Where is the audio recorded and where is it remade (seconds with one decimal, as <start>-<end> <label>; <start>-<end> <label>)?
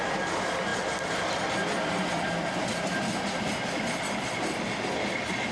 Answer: 0.0-5.5 recorded